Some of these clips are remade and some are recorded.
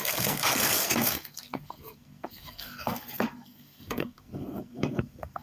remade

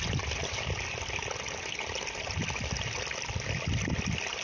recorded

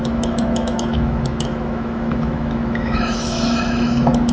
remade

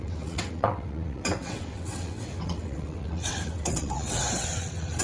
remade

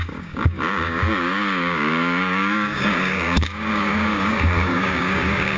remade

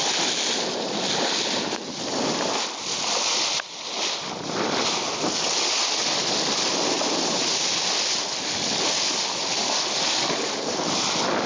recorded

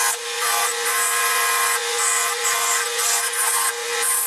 remade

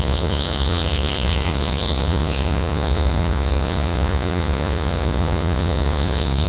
remade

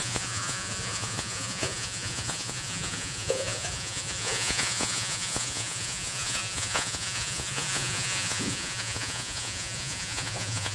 remade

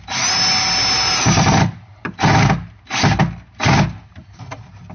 recorded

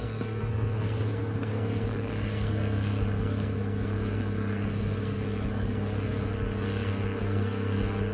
remade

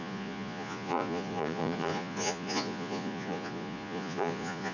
remade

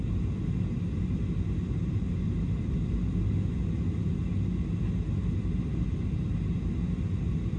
recorded